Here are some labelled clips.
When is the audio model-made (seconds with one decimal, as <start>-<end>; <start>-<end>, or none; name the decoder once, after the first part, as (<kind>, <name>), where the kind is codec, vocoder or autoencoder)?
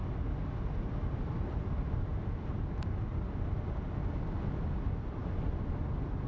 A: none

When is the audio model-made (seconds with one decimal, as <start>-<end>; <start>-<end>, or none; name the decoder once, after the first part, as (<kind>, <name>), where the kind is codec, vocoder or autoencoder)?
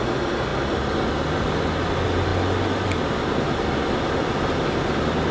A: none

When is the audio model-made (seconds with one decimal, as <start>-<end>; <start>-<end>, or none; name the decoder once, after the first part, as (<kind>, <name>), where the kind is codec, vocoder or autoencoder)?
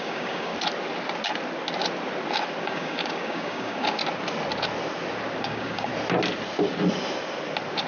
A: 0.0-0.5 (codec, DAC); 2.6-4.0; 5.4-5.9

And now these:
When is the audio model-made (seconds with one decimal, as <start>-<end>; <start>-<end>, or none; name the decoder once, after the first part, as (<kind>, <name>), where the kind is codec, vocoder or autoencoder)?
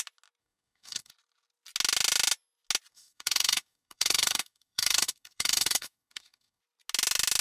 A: 0.4-1.1 (codec, DAC); 2.9-6.6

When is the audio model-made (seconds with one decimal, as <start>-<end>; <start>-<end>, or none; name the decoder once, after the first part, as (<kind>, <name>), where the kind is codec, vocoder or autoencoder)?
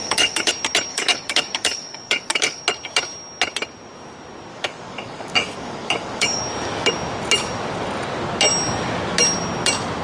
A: 0.0-0.5 (codec, DAC); 0.9-2.6; 4.5-6.4